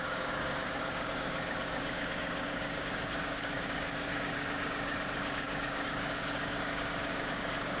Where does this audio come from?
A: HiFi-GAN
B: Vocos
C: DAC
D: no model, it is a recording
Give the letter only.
C